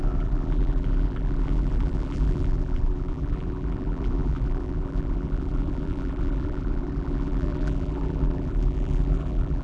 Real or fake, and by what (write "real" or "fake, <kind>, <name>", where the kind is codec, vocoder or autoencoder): fake, vocoder, BigVGAN v2